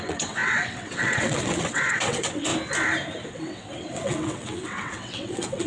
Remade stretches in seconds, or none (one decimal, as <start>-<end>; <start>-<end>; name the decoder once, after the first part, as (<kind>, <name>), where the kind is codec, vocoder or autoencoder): 0.0-2.5 (vocoder, WaveNeXt); 3.3-5.7